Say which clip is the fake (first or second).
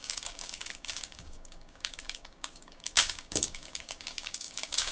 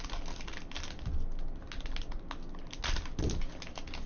first